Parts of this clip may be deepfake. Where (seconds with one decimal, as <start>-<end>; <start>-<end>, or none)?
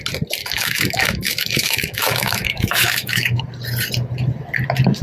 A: 0.4-3.4